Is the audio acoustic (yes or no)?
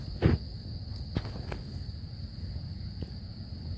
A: yes